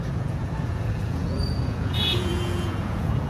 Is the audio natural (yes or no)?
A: no